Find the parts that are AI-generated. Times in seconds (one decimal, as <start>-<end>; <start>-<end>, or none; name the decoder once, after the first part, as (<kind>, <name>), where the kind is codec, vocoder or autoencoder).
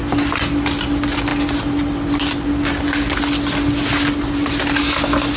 none